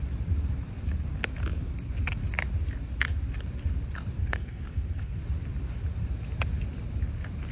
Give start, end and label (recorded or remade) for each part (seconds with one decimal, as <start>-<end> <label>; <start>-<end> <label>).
0.0-4.2 recorded; 4.2-5.2 remade; 5.2-7.5 recorded